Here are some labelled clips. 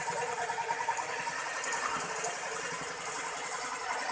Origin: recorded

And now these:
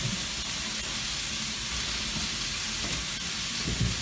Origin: recorded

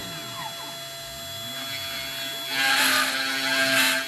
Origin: recorded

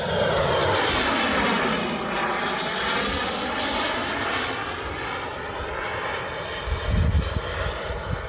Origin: recorded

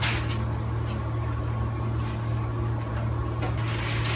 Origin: recorded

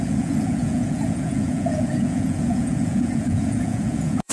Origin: remade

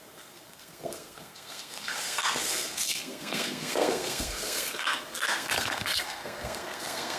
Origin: remade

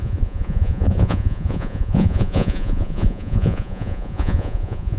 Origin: remade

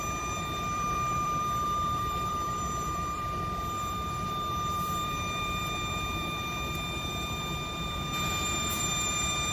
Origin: remade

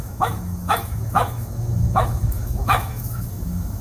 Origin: remade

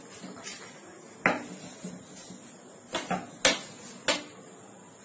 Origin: recorded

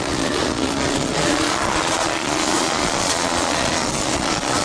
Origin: remade